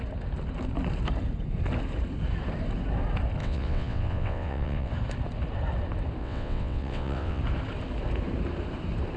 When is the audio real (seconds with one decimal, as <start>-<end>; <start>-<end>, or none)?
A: 0.0-3.4; 4.9-6.2; 7.4-9.2

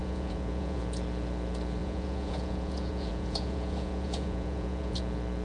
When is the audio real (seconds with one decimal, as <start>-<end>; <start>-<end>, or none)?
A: 0.8-1.8; 5.0-5.4

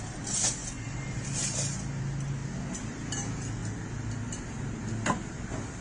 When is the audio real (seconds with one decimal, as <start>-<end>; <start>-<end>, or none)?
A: 0.0-5.8

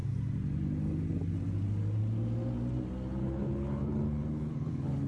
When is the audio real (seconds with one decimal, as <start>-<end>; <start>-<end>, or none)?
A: 0.0-3.2

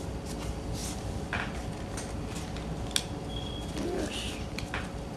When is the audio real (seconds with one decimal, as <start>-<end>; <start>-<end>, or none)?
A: 0.0-5.2

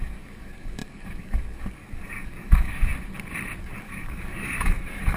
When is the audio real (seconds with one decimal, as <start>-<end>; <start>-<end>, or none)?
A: 2.9-3.6

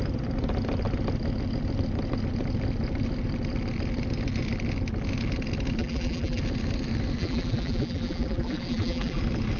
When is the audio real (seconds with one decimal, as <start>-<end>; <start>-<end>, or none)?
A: 0.0-5.8; 6.4-7.2; 9.2-9.6

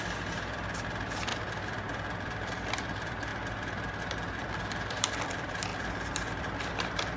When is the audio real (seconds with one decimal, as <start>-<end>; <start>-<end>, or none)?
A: 5.7-6.4